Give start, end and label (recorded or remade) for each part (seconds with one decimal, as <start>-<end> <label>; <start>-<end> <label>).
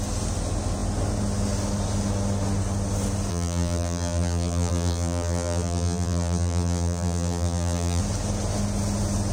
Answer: 0.0-3.3 recorded; 3.3-8.0 remade; 8.0-9.3 recorded